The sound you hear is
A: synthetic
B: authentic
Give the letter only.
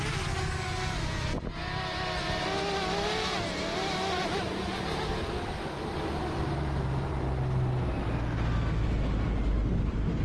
B